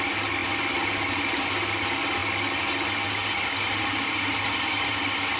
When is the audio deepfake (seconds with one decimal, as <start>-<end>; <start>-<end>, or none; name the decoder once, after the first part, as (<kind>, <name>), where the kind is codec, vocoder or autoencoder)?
none